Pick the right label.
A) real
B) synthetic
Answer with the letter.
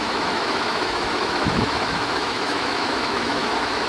B